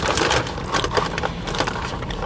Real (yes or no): yes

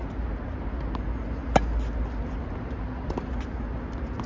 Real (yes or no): yes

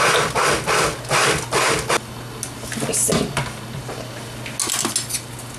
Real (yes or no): yes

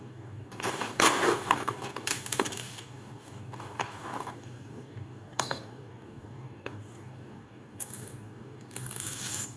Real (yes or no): no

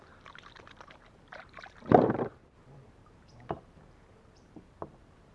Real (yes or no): no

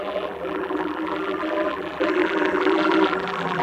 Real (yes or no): no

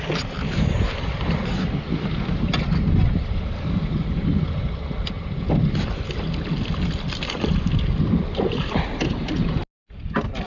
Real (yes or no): yes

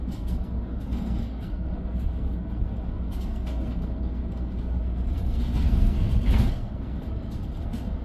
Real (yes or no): no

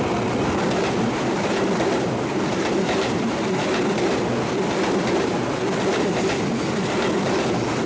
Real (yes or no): no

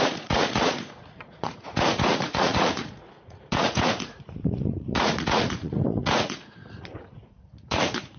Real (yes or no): no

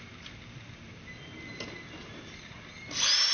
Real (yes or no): yes